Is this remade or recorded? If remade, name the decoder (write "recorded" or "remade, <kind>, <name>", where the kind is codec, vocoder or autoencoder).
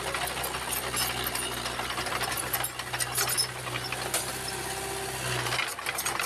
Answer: recorded